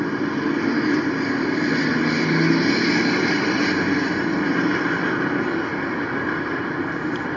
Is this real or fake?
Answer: real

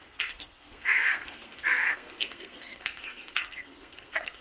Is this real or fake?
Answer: fake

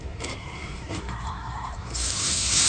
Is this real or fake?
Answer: fake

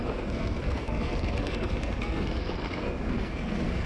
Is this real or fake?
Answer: fake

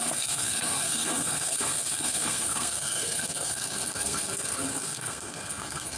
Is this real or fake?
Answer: fake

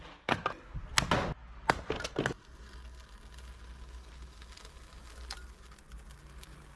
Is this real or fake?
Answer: real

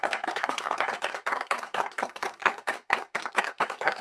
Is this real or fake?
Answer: fake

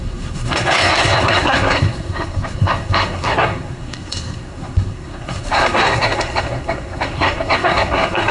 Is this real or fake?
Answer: fake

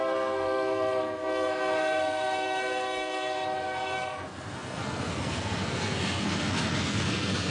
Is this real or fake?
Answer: fake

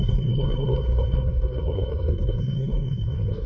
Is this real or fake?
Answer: fake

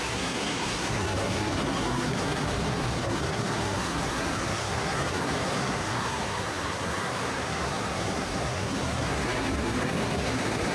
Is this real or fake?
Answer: fake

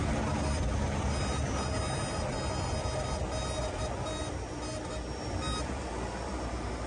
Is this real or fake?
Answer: real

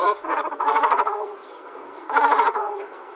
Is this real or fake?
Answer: fake